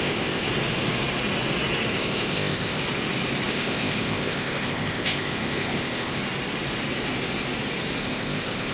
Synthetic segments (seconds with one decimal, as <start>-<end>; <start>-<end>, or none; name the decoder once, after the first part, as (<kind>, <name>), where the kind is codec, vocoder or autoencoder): 0.0-0.5 (codec, ZipCodec); 1.9-2.8; 3.5-6.2; 8.0-8.7